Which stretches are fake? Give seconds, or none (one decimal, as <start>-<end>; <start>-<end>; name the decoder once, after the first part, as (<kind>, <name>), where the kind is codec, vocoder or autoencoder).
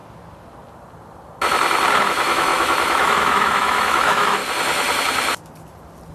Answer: 2.0-4.4 (autoencoder, DAC-VAE)